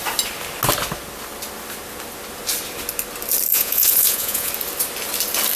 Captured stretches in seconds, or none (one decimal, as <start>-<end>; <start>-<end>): 0.0-3.5; 4.5-5.6